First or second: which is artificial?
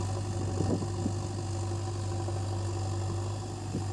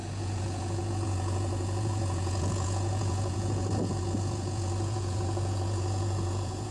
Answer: second